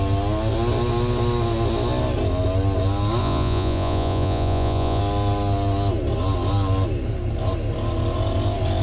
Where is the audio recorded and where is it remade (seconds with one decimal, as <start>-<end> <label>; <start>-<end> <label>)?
0.0-3.2 recorded; 3.2-5.0 remade; 5.0-8.8 recorded